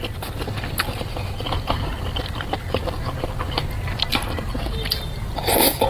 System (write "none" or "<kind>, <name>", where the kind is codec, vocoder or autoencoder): none